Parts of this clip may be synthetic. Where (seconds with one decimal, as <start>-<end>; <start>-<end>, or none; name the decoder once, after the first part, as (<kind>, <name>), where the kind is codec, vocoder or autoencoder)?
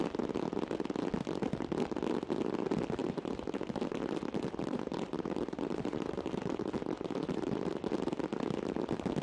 3.0-7.8 (vocoder, BigVGAN v2)